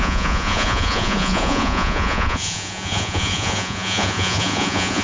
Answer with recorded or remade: remade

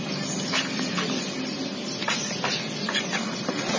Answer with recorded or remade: recorded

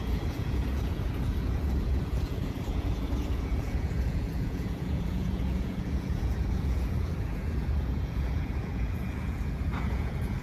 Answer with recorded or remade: remade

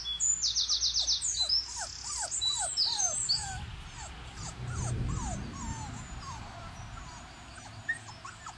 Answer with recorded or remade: recorded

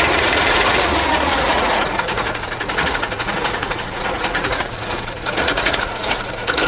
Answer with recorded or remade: remade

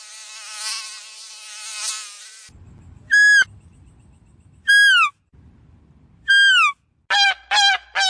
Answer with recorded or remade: recorded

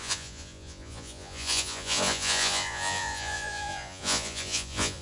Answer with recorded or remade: remade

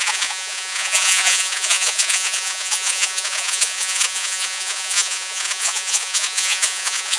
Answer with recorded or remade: remade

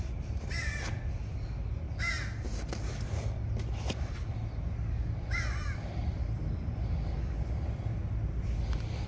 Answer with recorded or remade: recorded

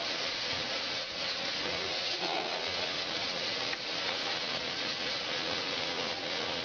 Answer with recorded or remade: remade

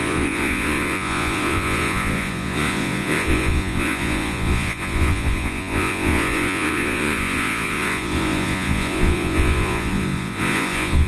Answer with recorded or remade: remade